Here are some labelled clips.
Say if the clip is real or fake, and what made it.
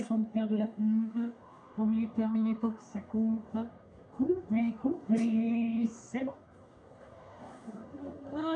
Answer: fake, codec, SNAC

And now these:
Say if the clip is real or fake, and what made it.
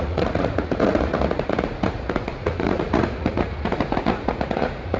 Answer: fake, vocoder, Vocos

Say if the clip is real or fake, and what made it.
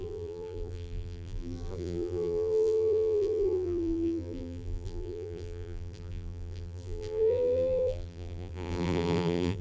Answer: fake, vocoder, BigVGAN v2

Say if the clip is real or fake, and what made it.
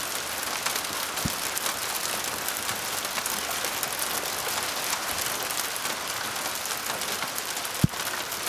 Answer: real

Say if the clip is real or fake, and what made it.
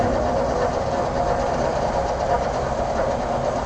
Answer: real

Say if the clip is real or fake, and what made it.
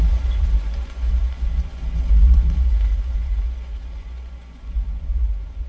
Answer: fake, vocoder, Vocos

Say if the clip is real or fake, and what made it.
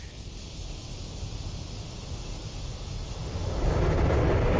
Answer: real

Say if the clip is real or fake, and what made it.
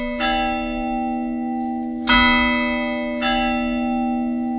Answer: real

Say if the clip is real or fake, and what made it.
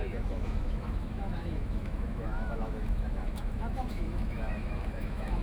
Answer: fake, autoencoder, DAC-VAE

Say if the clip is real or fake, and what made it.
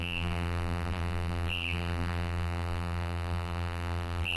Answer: fake, vocoder, BigVGAN v2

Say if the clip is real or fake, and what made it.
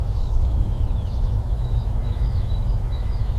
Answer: fake, autoencoder, DAC-VAE